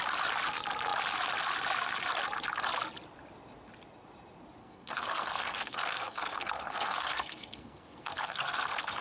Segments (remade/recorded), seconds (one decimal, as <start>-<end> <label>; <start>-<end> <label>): 0.0-4.6 recorded; 4.6-9.0 remade